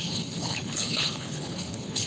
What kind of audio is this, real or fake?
fake